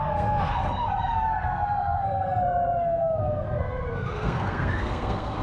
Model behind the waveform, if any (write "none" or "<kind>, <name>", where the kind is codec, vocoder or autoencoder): codec, SNAC